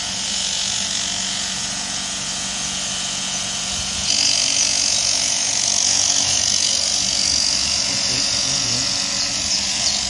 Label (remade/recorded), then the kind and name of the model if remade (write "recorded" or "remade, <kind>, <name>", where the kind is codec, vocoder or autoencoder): remade, vocoder, Vocos